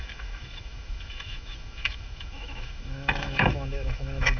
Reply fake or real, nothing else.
fake